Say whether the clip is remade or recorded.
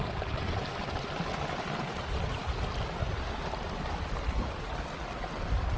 recorded